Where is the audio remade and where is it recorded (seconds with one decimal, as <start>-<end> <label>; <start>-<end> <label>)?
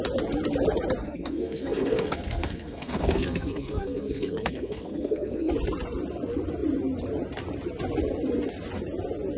0.0-1.0 recorded; 1.0-5.5 remade; 5.5-9.4 recorded